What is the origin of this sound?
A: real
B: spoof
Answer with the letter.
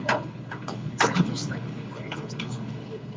B